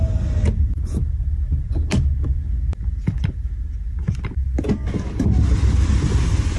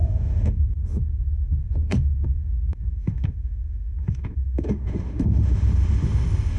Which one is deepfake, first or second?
second